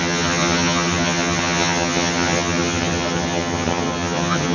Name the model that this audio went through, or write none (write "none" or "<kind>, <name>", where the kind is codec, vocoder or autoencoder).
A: vocoder, HiFi-GAN